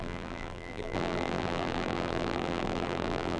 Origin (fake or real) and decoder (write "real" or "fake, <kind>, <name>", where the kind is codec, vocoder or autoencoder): fake, vocoder, BigVGAN v2